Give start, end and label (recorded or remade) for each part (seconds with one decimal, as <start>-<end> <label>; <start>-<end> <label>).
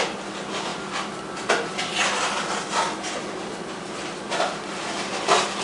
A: 0.0-5.6 recorded